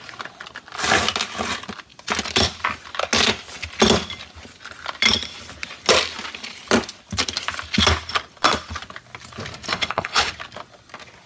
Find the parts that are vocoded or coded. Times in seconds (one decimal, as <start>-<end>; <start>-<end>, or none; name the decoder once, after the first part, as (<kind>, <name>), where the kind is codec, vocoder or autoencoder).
9.7-10.3 (codec, HILCodec)